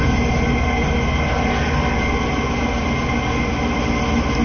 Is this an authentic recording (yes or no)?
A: yes